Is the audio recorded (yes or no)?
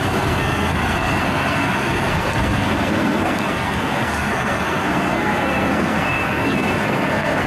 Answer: no